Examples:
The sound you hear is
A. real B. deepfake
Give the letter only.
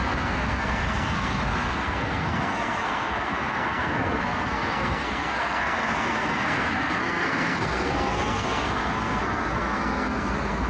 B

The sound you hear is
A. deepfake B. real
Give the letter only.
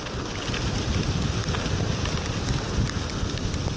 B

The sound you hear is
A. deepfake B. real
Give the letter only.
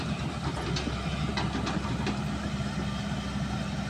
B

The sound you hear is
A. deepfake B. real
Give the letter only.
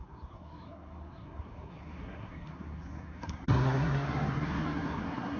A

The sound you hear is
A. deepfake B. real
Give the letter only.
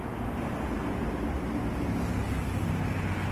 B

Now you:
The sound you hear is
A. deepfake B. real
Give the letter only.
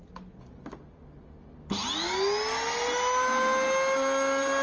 B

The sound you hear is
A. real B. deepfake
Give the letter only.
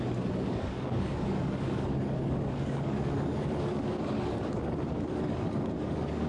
B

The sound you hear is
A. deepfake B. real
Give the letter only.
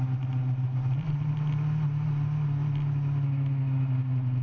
B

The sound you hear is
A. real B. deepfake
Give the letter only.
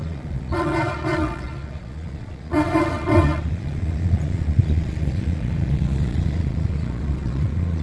B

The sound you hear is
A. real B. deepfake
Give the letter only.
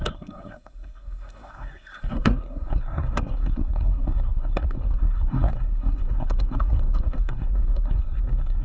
B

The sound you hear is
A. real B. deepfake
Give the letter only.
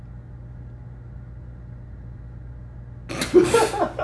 A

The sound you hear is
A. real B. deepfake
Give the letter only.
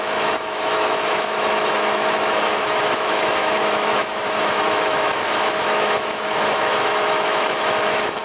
B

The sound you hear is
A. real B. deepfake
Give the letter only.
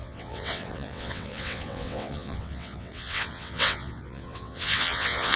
B